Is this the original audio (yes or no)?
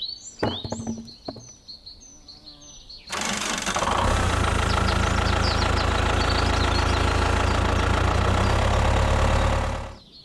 yes